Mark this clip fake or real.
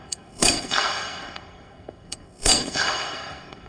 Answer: fake